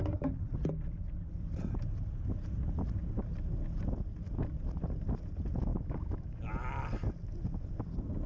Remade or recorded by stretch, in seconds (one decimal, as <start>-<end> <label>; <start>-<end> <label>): 0.0-5.7 recorded; 5.7-6.5 remade; 6.5-8.3 recorded